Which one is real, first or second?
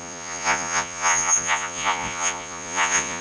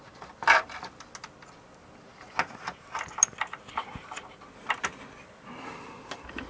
second